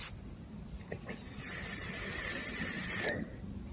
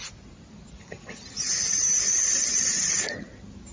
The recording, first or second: second